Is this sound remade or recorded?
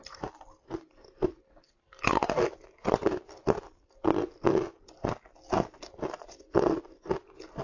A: recorded